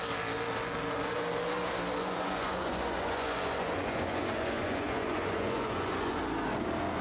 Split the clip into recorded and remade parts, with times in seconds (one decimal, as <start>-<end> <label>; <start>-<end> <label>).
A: 0.0-2.0 recorded; 2.0-6.2 remade; 6.2-7.0 recorded